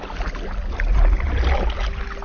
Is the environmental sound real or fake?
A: real